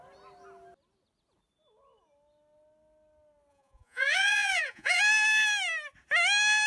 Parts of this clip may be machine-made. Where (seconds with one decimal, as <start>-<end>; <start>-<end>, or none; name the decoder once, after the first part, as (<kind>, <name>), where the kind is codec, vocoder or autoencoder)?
3.5-5.0 (vocoder, Vocos)